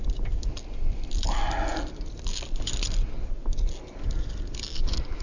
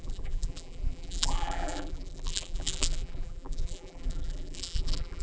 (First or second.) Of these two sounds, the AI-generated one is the second